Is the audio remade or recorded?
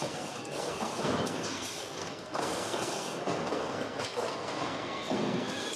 remade